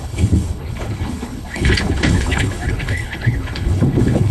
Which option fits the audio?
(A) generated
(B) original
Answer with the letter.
A